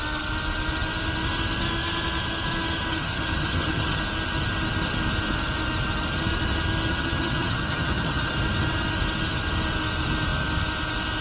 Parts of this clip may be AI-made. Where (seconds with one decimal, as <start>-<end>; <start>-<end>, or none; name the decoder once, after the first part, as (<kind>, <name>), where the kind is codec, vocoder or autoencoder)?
2.9-4.0 (vocoder, HiFi-GAN); 6.9-8.3